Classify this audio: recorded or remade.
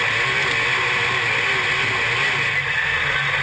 recorded